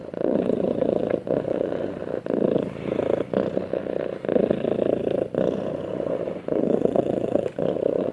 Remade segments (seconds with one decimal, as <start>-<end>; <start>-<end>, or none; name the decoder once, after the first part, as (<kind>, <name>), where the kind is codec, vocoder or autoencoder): 0.0-2.0 (vocoder, Vocos); 5.9-8.1

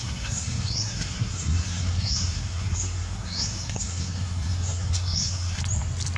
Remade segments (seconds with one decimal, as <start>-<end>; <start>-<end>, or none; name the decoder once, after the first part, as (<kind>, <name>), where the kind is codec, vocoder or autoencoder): 0.0-5.6 (codec, SNAC)

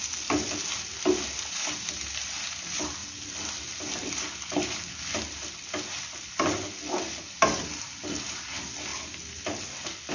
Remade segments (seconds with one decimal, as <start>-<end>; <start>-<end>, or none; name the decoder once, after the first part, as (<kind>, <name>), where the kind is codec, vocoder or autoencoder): none

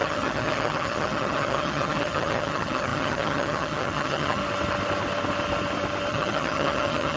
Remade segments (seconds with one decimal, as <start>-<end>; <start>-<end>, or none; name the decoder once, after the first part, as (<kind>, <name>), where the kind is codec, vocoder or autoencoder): 0.0-4.4 (vocoder, HiFi-GAN); 6.1-7.2

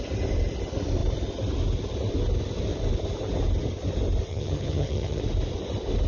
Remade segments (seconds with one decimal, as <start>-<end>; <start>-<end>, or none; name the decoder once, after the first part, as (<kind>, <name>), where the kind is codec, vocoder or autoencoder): 4.3-5.2 (vocoder, HiFi-GAN)

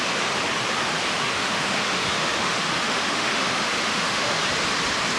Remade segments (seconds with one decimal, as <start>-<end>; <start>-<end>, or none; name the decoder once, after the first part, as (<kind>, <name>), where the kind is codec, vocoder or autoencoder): 1.3-4.4 (autoencoder, DAC-VAE)

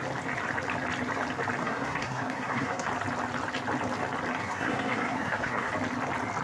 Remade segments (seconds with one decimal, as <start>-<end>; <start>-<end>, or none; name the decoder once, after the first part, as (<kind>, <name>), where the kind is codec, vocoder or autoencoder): 1.6-2.9 (codec, SNAC); 4.4-5.7

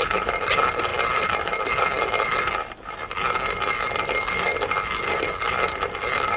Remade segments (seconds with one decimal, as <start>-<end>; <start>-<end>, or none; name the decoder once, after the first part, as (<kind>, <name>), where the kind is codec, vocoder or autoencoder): none